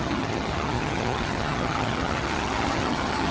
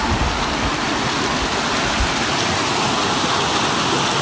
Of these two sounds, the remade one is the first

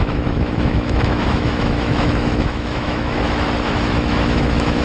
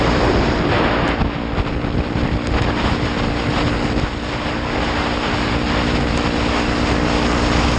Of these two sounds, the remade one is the first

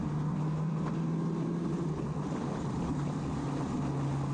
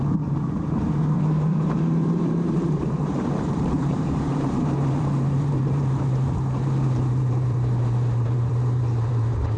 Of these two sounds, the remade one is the second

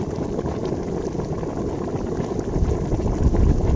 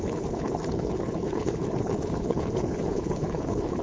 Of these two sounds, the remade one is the second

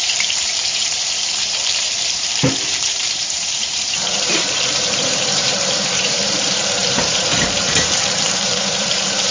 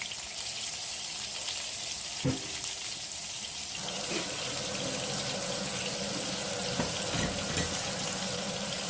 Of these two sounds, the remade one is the first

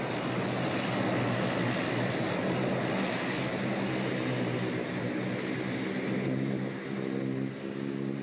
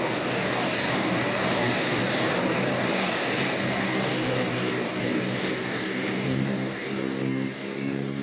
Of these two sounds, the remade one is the second